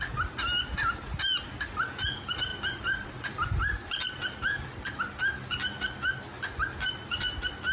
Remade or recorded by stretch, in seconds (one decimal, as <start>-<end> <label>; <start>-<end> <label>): 0.0-2.5 recorded; 2.5-5.0 remade; 5.0-7.7 recorded

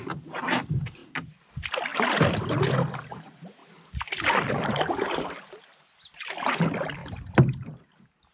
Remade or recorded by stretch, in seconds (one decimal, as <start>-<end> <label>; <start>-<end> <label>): 0.0-1.9 recorded; 1.9-2.7 remade; 2.7-3.6 recorded; 3.6-5.6 remade; 5.6-7.0 recorded; 7.0-7.8 remade; 7.8-8.3 recorded

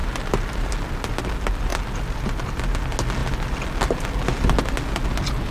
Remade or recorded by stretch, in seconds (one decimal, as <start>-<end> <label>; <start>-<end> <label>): 0.0-0.7 remade; 0.7-1.7 recorded; 1.7-2.6 remade; 2.6-5.5 recorded

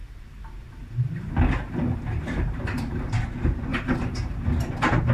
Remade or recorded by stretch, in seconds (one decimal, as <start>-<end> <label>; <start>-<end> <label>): 0.0-3.1 remade; 3.1-3.7 recorded; 3.7-4.5 remade; 4.5-5.1 recorded